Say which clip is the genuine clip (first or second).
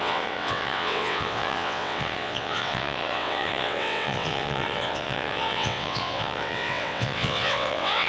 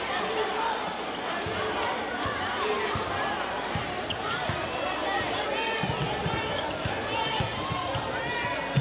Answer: second